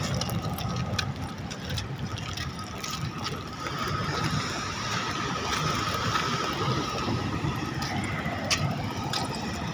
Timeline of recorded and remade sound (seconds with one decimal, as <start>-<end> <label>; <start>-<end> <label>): 0.0-9.7 recorded

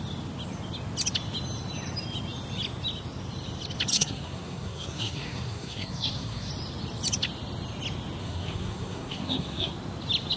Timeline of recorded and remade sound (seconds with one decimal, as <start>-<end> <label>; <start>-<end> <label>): 0.0-3.9 recorded; 3.9-6.5 remade; 6.5-8.2 recorded; 8.2-9.7 remade; 9.7-10.4 recorded